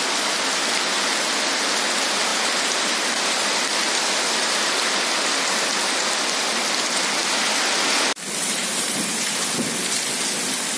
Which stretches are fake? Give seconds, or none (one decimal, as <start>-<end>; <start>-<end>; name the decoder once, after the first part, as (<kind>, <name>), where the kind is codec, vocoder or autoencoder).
2.3-3.5 (vocoder, BigVGAN v2); 8.6-9.3